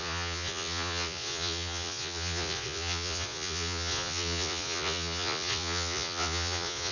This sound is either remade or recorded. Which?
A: remade